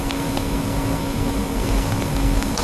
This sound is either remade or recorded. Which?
remade